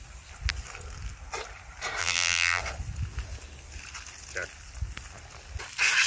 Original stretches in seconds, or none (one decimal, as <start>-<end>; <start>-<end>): 0.0-2.0; 2.6-6.1